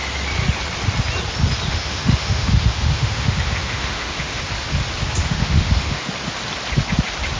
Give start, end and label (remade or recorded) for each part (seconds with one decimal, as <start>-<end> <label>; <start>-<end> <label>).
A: 0.0-1.7 recorded; 1.7-4.5 remade; 4.5-5.2 recorded; 5.2-6.1 remade; 6.1-7.4 recorded